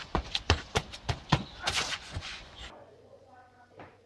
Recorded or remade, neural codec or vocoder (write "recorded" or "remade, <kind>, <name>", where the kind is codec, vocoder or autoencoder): remade, vocoder, Vocos